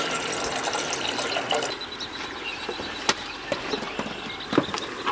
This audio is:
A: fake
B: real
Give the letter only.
B